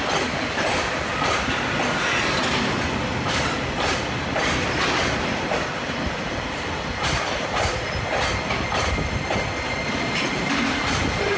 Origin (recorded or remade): recorded